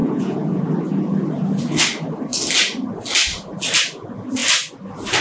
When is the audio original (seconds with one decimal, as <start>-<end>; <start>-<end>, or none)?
0.6-5.2